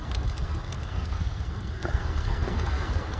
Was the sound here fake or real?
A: fake